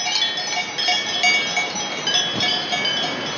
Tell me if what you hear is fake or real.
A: real